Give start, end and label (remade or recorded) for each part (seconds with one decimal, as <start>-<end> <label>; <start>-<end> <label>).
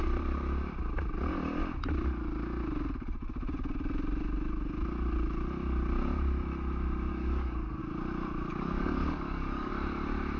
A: 0.0-7.1 recorded; 7.1-7.8 remade; 7.8-8.5 recorded; 8.5-9.7 remade; 9.7-10.4 recorded